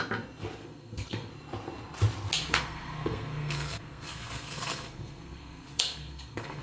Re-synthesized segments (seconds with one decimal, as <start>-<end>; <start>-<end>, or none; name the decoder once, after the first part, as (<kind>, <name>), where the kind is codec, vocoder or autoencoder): 0.6-1.3 (codec, SNAC); 2.5-6.6

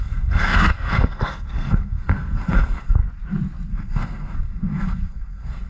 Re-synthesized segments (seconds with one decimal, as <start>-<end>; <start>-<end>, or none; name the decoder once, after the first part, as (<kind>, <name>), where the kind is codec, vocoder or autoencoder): 0.0-3.0 (codec, SNAC); 3.7-5.7